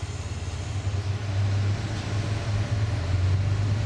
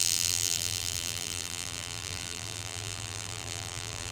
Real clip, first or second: first